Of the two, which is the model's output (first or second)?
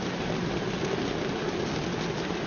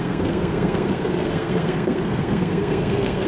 second